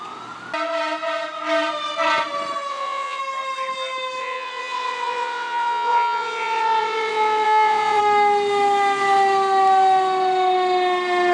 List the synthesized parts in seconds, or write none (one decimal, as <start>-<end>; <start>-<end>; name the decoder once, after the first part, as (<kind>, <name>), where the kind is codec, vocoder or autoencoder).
2.7-3.2 (vocoder, WaveNeXt); 4.2-8.0